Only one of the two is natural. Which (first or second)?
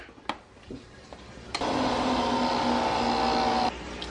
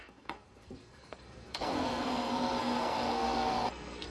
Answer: first